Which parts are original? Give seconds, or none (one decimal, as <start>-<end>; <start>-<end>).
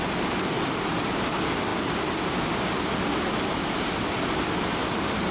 0.0-5.3